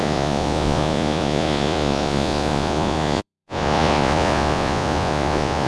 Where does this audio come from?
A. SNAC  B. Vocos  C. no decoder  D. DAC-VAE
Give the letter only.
B